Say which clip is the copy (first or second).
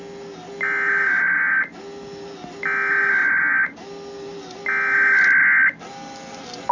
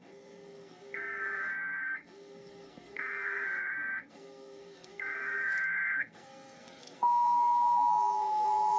second